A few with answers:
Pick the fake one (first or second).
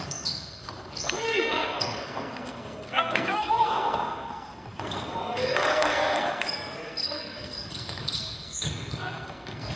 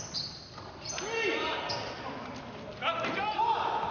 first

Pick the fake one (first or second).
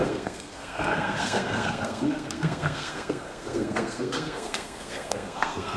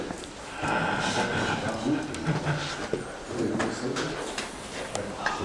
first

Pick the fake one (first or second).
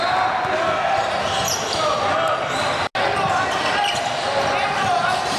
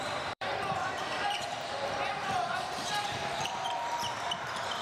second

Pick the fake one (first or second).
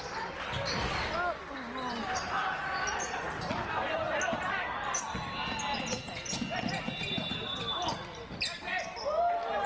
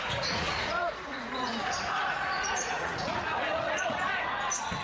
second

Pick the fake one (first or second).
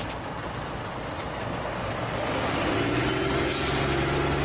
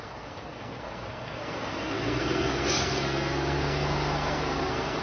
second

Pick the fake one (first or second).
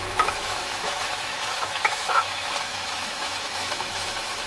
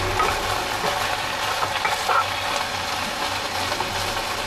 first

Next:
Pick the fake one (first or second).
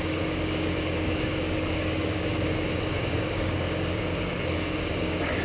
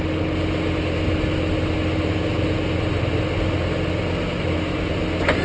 first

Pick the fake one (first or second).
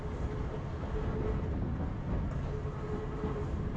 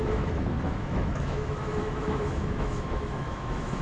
second